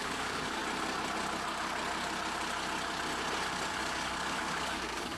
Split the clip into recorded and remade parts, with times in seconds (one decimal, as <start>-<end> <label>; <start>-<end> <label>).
0.0-0.6 remade; 0.6-3.7 recorded; 3.7-5.2 remade

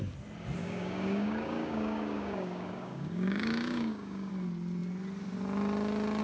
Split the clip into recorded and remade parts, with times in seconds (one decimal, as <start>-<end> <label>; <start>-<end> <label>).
0.0-0.6 recorded; 0.6-4.3 remade; 4.3-6.2 recorded

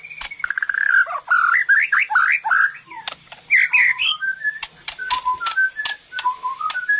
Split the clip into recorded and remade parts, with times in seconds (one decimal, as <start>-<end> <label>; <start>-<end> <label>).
0.0-3.8 recorded; 3.8-4.5 remade; 4.5-7.0 recorded